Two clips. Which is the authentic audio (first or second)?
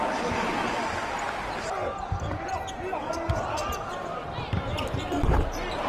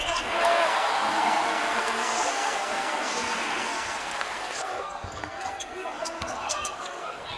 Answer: first